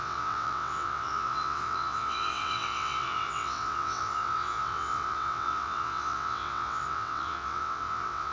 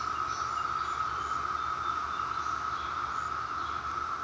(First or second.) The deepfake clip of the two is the first